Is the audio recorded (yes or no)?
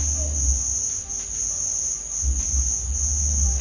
yes